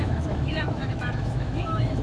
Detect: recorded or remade remade